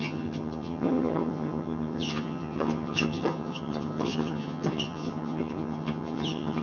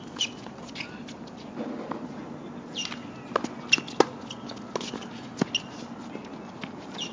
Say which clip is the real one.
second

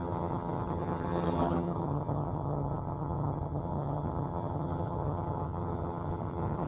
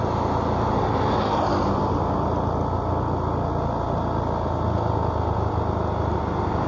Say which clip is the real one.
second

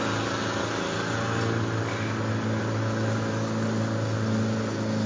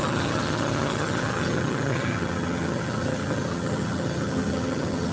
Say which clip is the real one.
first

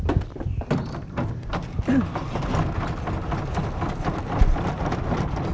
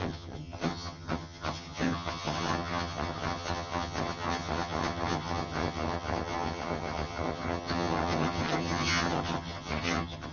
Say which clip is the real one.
first